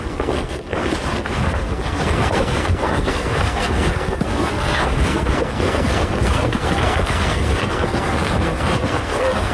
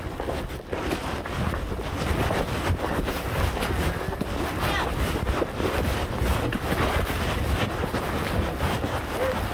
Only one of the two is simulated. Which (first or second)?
first